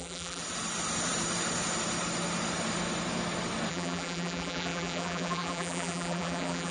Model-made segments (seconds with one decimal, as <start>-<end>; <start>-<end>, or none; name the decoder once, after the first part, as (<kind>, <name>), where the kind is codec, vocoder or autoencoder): 0.0-0.4 (vocoder, BigVGAN v2); 3.7-6.7